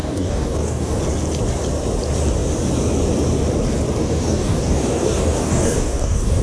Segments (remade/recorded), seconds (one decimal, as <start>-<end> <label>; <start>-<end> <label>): 0.0-1.0 remade; 1.0-4.0 recorded; 4.0-6.4 remade